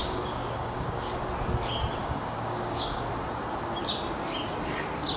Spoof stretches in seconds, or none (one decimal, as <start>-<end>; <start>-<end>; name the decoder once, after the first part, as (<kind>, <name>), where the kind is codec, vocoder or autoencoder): 0.0-1.1 (codec, DAC); 2.0-3.1